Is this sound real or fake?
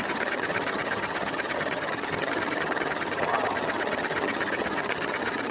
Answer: fake